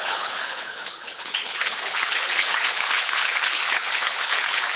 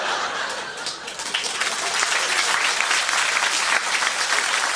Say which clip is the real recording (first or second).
second